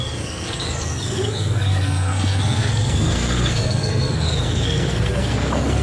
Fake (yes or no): yes